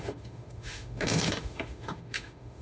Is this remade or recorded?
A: remade